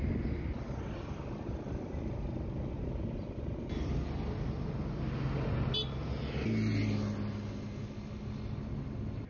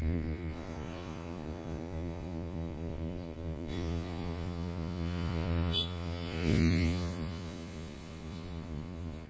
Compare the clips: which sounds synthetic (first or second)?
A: second